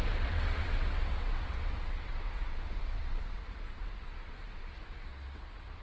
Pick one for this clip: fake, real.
fake